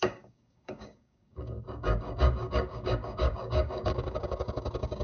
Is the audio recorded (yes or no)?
no